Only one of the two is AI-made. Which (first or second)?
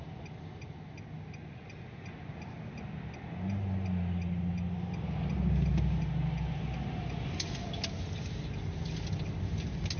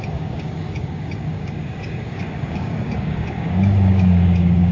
second